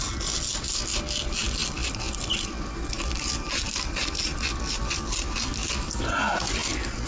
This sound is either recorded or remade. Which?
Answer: recorded